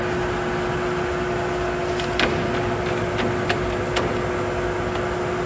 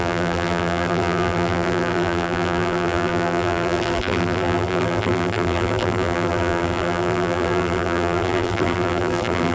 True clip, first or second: first